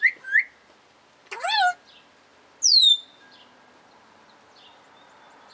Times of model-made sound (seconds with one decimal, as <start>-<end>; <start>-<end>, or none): none